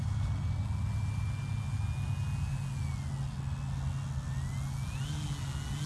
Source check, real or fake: real